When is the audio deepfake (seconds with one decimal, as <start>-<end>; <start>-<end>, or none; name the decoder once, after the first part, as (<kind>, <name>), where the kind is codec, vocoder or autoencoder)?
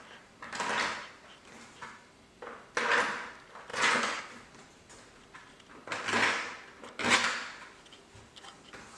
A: 3.7-4.2 (vocoder, Vocos)